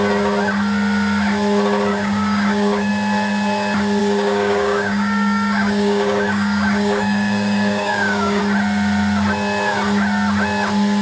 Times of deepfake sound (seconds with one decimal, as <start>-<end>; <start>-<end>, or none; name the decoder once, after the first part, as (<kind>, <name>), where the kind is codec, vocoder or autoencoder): 1.9-2.9 (codec, DAC); 4.0-8.4